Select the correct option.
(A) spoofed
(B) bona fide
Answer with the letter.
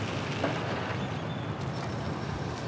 B